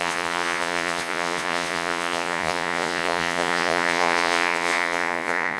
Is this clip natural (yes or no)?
no